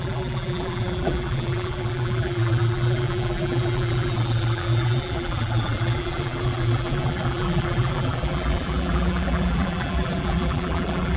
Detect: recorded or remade remade